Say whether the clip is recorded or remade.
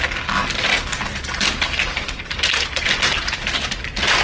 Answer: recorded